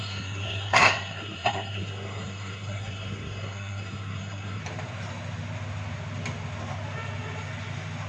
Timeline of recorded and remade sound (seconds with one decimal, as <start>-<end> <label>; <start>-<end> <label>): 0.0-4.6 remade; 4.6-8.1 recorded